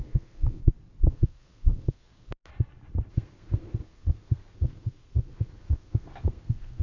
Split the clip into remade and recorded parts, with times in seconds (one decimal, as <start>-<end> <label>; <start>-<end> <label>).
0.0-0.6 remade; 0.6-1.1 recorded; 1.1-2.5 remade; 2.5-3.1 recorded; 3.1-6.8 remade